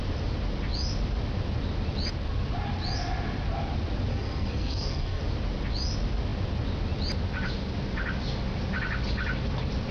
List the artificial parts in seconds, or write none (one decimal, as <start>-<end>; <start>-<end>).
4.1-5.2